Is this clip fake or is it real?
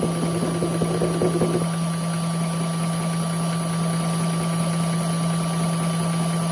real